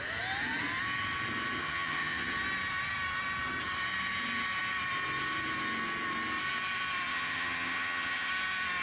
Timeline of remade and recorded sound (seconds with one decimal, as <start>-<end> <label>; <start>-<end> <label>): 0.0-1.6 recorded; 1.6-2.3 remade; 2.3-7.1 recorded; 7.1-8.3 remade; 8.3-8.8 recorded